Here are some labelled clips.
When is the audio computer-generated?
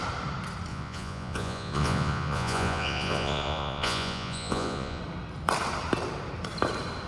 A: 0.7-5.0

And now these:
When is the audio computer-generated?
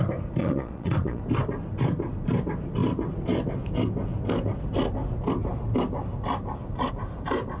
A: 0.4-1.2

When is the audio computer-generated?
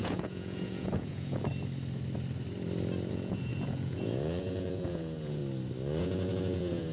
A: 0.0-1.5; 3.1-5.4; 6.0-6.9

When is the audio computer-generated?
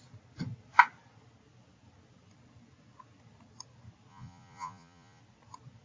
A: 4.1-5.2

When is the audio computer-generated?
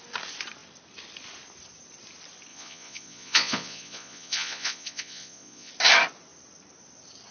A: 2.5-5.7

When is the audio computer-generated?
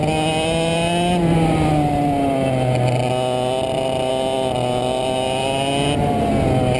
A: none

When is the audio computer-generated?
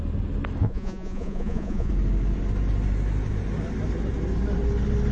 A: 0.6-1.9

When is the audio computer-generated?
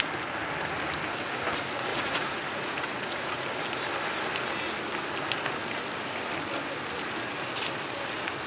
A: 1.9-3.3